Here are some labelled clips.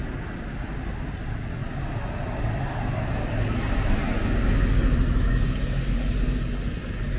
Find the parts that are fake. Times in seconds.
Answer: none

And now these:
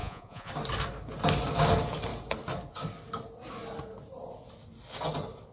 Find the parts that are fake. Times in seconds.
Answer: 0.0-0.5 (vocoder, Vocos)

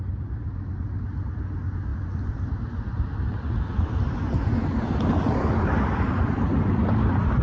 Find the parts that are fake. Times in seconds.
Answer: none

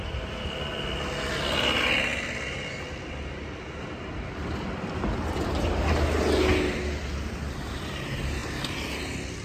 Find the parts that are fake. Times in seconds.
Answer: none

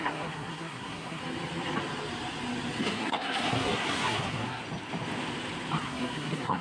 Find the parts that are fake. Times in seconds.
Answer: 0.0-1.2 (codec, SNAC); 2.8-4.6; 5.8-6.6

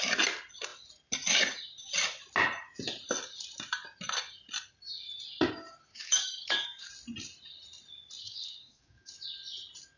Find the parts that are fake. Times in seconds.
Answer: 5.9-6.9 (codec, DAC); 8.2-9.1

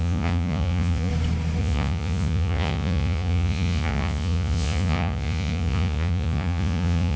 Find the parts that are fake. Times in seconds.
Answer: 0.0-1.1 (vocoder, Vocos); 1.6-7.2

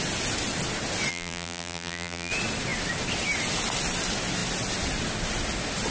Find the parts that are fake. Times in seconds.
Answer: 1.1-2.3 (vocoder, BigVGAN v2)